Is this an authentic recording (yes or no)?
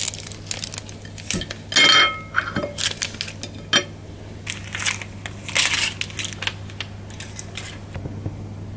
yes